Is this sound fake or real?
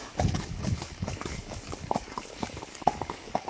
fake